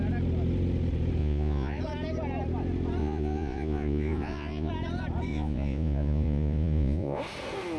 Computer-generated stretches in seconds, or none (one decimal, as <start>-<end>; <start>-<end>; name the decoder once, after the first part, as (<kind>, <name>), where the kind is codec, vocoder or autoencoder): 1.2-1.8 (vocoder, Vocos); 3.0-4.7; 5.3-7.2